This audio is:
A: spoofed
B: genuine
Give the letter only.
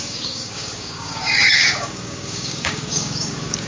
A